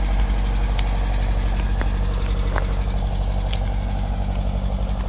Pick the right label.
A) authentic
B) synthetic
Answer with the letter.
A